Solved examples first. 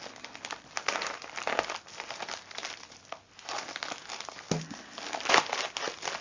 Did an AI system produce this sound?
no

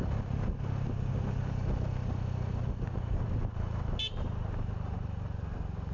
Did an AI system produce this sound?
no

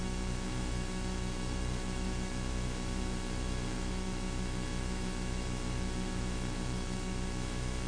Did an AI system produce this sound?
yes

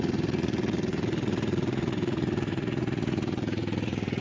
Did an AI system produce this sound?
yes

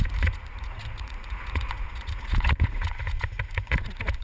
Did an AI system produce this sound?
yes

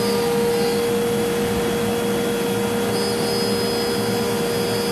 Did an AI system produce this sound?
no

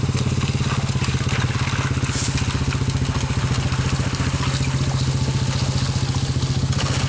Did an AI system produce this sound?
no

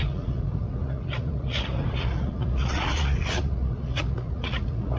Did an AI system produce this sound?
yes